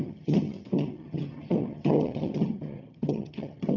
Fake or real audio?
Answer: fake